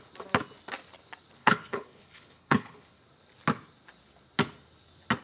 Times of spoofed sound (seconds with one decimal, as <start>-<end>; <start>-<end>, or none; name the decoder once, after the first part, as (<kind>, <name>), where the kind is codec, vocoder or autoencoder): 1.4-3.0 (codec, HILCodec)